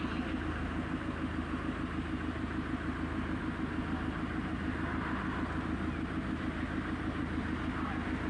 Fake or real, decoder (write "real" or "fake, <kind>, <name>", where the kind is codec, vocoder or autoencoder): real